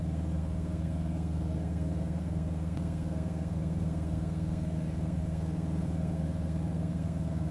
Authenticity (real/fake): fake